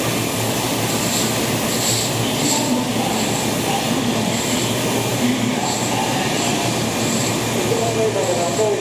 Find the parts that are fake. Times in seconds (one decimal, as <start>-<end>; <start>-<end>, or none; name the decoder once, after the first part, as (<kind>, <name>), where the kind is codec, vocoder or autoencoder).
5.1-7.3 (vocoder, BigVGAN v2)